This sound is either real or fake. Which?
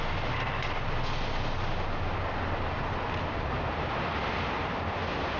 real